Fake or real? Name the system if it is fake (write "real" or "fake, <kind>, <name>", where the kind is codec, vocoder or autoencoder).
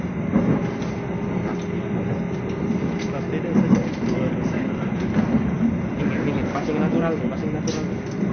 real